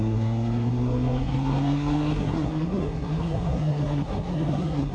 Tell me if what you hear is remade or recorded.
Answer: remade